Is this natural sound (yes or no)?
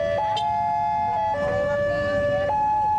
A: yes